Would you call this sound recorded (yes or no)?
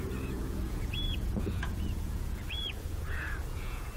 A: no